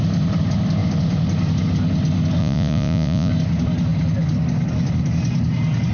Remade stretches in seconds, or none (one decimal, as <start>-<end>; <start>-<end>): 2.4-3.3